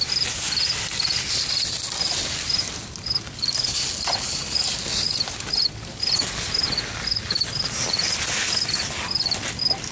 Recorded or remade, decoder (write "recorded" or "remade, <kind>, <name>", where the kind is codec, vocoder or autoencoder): recorded